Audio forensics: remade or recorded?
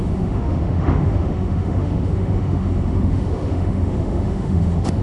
remade